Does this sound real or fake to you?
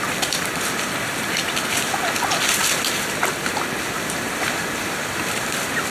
real